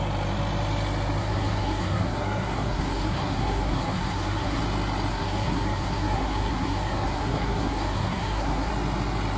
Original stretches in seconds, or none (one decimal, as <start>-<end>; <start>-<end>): 0.0-1.2; 4.6-5.1; 8.7-9.4